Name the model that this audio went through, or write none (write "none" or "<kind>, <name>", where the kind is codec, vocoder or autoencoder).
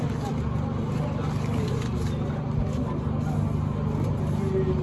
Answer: none